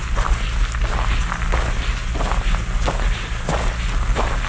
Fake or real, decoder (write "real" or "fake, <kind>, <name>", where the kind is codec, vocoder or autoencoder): real